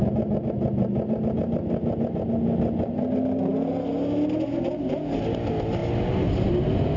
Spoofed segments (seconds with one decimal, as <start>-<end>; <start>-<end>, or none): none